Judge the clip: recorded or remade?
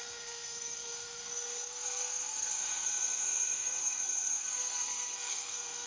remade